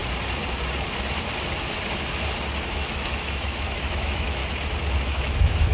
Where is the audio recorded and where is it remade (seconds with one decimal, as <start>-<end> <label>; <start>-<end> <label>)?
0.0-2.7 recorded; 2.7-4.4 remade; 4.4-5.0 recorded; 5.0-5.7 remade

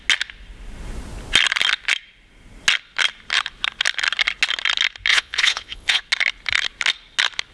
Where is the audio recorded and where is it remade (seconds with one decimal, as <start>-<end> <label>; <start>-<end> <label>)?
0.0-5.1 recorded; 5.1-6.0 remade; 6.0-7.5 recorded

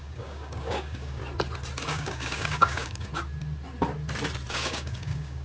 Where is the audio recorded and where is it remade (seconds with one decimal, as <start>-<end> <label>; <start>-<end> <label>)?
0.0-1.2 remade; 1.2-1.9 recorded; 1.9-3.1 remade; 3.1-4.5 recorded; 4.5-5.4 remade

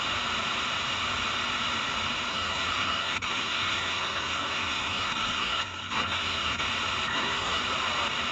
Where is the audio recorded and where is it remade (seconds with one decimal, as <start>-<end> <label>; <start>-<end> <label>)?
0.0-2.3 recorded; 2.3-6.6 remade; 6.6-7.1 recorded; 7.1-7.6 remade; 7.6-8.3 recorded

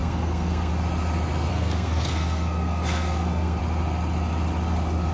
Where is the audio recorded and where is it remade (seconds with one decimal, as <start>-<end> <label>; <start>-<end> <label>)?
0.0-0.7 remade; 0.7-1.5 recorded; 1.5-3.6 remade; 3.6-5.1 recorded